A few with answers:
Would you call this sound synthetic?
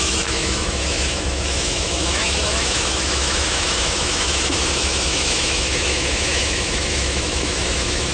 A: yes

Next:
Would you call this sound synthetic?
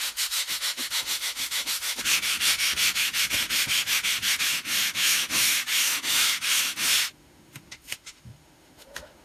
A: yes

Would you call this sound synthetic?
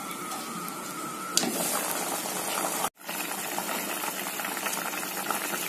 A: no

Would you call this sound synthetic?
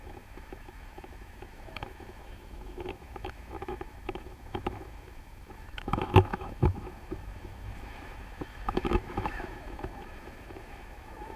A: yes